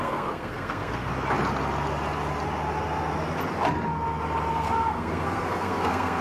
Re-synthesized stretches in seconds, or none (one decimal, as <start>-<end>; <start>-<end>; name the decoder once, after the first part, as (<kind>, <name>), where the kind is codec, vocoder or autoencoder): 0.0-1.1 (codec, SNAC); 4.5-6.2